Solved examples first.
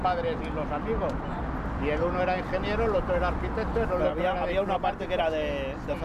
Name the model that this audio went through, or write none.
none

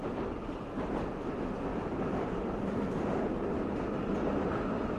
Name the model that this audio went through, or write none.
none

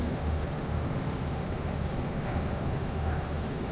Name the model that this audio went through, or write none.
autoencoder, DAC-VAE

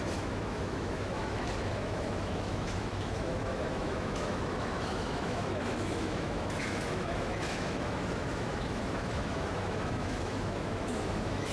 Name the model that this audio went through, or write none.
autoencoder, DAC-VAE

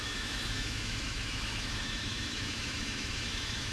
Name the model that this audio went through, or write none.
autoencoder, DAC-VAE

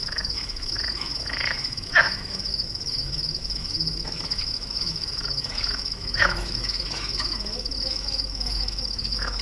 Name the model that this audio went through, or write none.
autoencoder, DAC-VAE